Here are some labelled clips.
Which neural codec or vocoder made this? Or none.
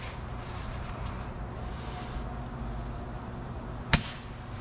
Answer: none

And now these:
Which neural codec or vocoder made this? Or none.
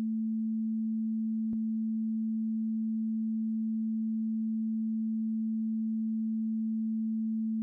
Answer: none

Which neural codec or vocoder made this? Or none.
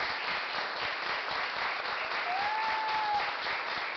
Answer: none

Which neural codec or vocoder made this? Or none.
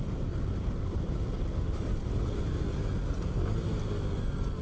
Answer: none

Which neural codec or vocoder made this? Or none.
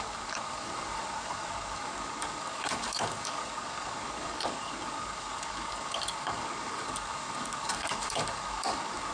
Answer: codec, DAC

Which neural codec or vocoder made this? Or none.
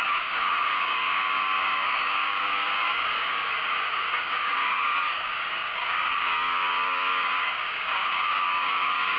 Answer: codec, DAC